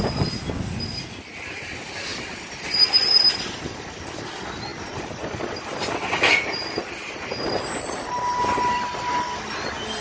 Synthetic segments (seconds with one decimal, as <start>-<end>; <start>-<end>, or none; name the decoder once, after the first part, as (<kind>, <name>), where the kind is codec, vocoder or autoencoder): none